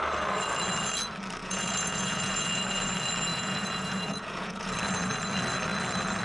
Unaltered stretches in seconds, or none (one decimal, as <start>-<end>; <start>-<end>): 0.0-1.4; 2.6-3.3; 4.7-6.2